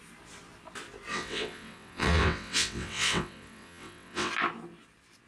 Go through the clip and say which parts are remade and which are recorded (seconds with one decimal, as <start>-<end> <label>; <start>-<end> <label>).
0.0-1.1 recorded; 1.1-4.3 remade; 4.3-5.3 recorded